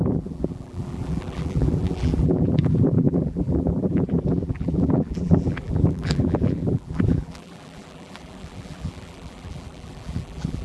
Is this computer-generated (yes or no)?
yes